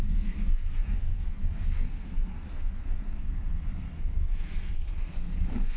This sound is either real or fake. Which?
fake